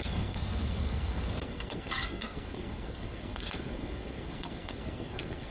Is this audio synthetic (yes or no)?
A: yes